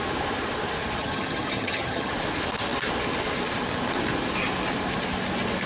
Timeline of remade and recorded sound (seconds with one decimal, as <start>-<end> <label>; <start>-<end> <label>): 0.0-1.0 recorded; 1.0-2.1 remade; 2.1-5.7 recorded